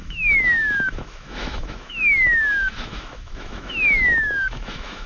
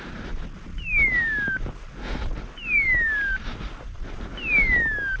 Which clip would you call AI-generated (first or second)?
first